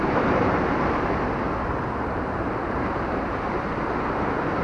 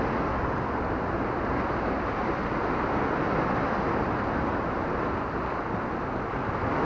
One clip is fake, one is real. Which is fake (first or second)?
first